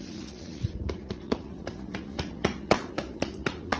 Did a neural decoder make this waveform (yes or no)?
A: yes